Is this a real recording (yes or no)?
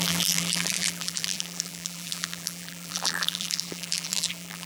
no